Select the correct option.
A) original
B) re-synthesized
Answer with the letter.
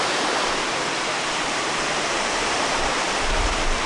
B